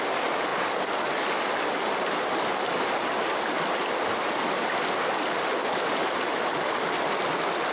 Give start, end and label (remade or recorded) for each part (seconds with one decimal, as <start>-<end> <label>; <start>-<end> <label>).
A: 0.0-7.7 recorded